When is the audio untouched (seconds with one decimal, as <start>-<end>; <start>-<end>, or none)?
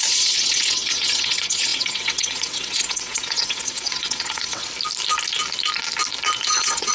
4.7-6.5